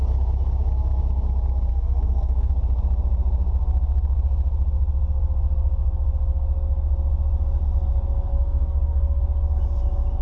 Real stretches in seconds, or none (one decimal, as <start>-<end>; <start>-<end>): 0.0-1.7; 2.5-8.3; 9.2-10.2